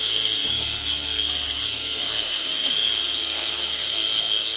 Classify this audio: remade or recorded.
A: remade